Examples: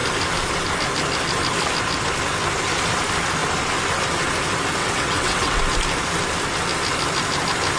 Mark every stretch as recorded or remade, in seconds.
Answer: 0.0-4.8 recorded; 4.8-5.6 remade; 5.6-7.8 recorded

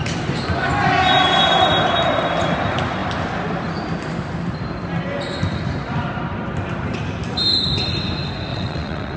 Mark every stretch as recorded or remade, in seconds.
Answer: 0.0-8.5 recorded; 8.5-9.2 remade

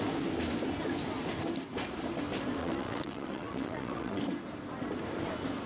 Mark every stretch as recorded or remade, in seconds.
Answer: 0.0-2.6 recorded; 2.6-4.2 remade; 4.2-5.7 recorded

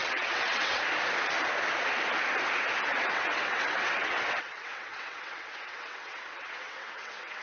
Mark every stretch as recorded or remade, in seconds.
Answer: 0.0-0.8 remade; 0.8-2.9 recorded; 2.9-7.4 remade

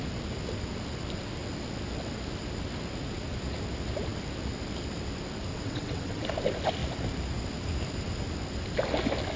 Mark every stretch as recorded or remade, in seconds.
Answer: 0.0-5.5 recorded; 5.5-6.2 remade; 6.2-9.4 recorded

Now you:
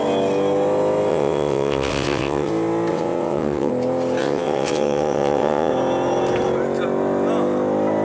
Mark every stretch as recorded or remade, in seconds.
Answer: 0.0-1.1 recorded; 1.1-2.5 remade; 2.5-2.9 recorded; 2.9-3.7 remade; 3.7-4.2 recorded; 4.2-5.7 remade; 5.7-8.0 recorded

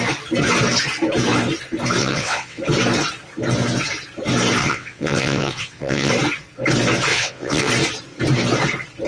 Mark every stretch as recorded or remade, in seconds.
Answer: 0.0-2.0 recorded; 2.0-2.6 remade; 2.6-4.6 recorded; 4.6-6.1 remade; 6.1-7.1 recorded; 7.1-7.7 remade; 7.7-9.1 recorded